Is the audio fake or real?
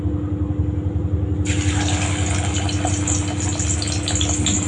real